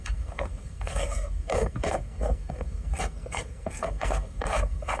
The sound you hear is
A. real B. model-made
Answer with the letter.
B